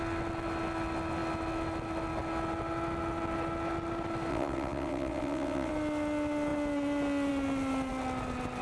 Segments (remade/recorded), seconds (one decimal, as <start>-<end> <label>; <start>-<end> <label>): 0.0-4.3 recorded; 4.3-5.7 remade; 5.7-8.6 recorded